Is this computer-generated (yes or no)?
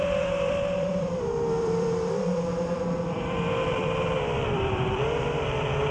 yes